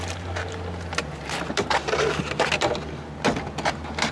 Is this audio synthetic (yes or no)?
no